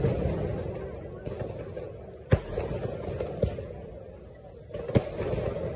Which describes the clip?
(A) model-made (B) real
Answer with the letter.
B